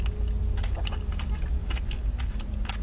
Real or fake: real